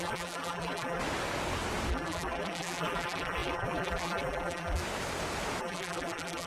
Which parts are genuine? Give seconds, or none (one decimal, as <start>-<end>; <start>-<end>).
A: 1.0-1.9; 4.8-5.6